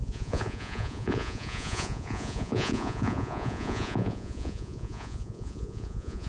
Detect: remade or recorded remade